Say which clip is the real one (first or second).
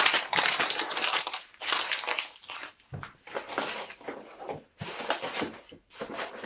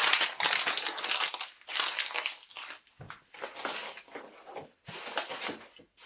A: second